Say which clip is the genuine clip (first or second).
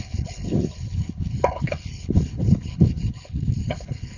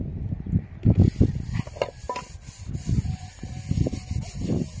second